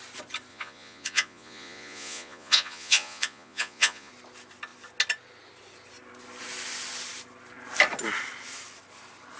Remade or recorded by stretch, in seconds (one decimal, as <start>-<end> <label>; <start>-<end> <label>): 0.0-0.5 recorded; 0.5-4.1 remade; 4.1-9.4 recorded